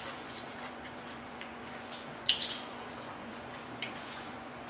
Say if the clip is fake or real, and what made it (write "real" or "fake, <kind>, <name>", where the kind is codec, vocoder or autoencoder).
fake, vocoder, Vocos